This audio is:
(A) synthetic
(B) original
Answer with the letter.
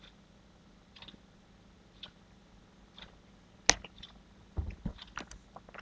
B